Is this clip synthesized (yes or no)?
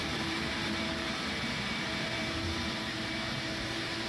yes